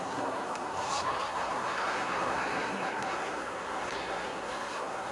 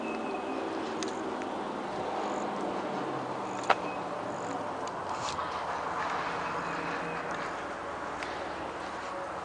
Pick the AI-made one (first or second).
first